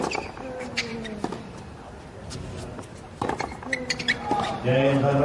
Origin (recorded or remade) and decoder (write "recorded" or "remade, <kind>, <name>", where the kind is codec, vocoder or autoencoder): recorded